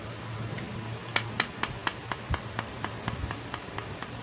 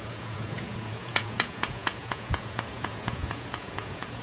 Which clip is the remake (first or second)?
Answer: second